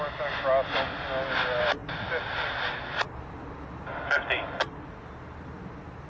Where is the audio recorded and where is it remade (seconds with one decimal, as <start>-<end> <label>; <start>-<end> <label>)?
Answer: 0.0-6.1 recorded